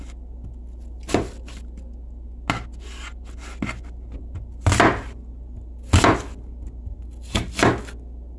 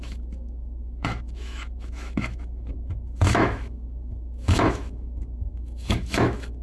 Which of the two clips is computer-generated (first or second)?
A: second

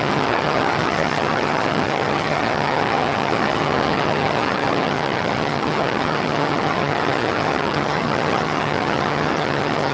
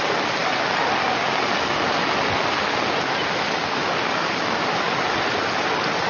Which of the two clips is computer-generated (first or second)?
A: first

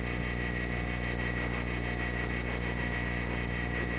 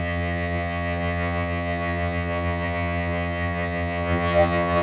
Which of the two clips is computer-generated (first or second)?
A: second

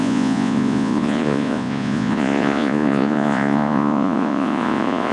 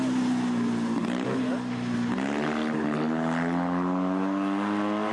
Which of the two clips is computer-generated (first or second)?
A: first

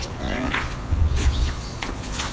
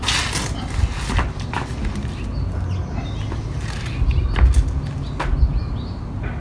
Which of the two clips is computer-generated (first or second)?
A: first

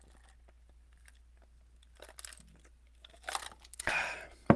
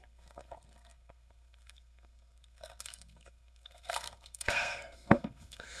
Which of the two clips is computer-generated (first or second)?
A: second